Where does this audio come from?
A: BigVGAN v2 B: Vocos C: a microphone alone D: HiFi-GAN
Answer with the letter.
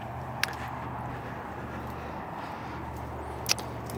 C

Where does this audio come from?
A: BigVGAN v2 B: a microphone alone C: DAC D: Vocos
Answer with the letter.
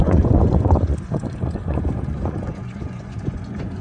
D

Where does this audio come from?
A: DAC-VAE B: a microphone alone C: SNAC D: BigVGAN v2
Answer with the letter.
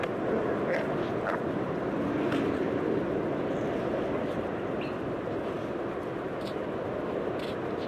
B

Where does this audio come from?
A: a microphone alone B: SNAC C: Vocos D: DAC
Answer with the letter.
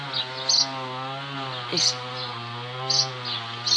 A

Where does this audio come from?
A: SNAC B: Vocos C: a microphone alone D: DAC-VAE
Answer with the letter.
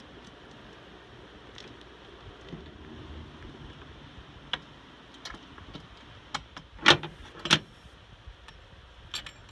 C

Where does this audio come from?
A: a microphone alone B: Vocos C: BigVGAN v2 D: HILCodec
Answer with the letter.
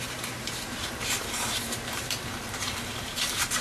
C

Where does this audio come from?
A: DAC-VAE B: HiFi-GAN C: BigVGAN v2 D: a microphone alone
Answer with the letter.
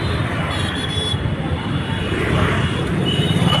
C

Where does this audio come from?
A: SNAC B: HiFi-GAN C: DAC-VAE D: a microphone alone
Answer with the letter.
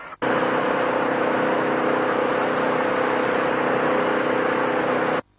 D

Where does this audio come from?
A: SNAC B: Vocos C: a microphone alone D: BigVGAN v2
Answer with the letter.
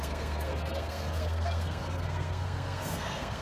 A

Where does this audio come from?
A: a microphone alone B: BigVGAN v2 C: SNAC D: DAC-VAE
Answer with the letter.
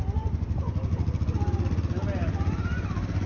A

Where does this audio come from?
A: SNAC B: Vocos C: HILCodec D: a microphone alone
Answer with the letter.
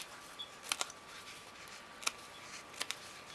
D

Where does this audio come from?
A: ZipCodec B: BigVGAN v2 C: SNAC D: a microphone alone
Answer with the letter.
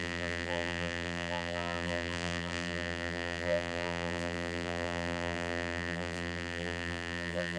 B